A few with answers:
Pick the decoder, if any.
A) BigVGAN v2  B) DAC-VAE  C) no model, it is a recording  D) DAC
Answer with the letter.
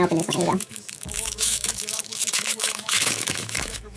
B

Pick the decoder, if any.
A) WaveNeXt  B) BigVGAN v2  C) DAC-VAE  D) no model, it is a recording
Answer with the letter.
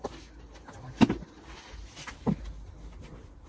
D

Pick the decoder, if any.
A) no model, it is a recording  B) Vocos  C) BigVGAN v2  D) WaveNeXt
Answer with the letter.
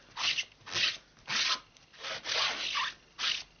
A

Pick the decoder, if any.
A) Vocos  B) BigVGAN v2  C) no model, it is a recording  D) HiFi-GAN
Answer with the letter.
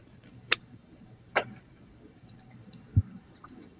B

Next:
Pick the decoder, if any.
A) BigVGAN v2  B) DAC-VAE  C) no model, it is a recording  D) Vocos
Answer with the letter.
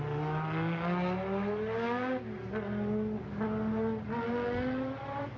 C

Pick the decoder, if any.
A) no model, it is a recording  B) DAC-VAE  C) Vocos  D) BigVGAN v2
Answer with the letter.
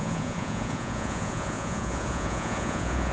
C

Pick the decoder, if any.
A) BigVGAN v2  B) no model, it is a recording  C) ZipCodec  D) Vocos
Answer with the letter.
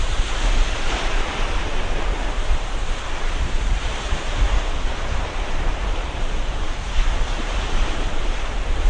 A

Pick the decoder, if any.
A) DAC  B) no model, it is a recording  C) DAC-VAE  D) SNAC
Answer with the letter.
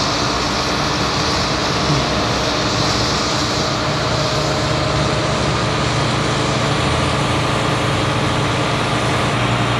B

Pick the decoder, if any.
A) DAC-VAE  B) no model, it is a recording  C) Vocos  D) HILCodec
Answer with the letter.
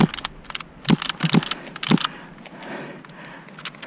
B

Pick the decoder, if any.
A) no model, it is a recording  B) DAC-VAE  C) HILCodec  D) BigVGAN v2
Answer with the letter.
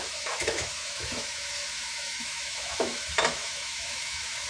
B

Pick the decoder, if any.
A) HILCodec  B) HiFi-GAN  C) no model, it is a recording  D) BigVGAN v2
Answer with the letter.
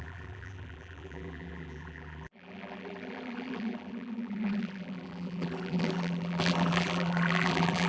D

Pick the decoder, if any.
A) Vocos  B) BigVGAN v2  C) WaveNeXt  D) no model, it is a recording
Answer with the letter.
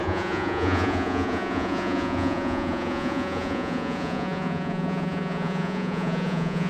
A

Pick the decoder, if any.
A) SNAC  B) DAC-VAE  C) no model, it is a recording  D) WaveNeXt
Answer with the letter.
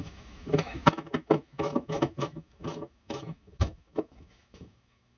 B